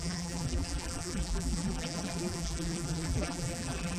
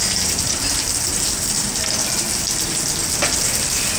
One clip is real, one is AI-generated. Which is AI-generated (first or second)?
first